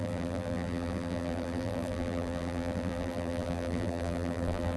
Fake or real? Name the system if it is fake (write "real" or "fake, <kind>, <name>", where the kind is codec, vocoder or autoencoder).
fake, vocoder, BigVGAN v2